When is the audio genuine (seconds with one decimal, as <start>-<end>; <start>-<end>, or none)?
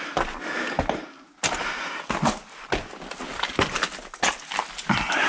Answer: 0.0-5.3